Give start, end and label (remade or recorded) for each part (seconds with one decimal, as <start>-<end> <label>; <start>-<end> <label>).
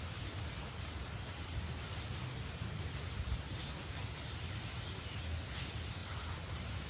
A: 0.0-6.9 recorded